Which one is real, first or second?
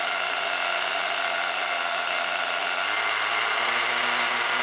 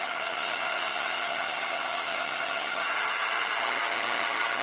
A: first